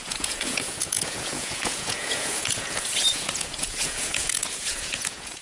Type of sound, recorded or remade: remade